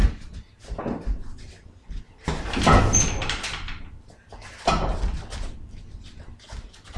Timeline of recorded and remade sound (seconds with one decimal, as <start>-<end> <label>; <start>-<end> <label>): 0.0-7.0 recorded